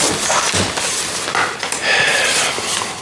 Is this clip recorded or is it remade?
recorded